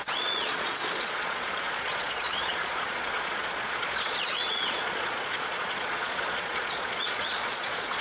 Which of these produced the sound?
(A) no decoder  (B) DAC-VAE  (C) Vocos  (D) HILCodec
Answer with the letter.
C